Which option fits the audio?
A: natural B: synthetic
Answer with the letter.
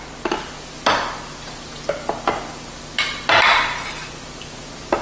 A